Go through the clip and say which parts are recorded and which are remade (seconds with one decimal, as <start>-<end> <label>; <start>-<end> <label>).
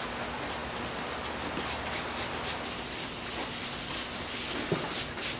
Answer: 0.0-5.4 recorded